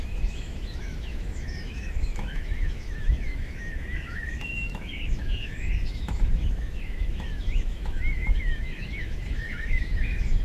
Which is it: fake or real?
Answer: fake